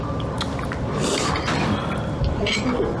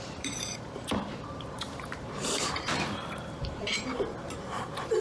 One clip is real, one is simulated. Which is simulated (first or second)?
second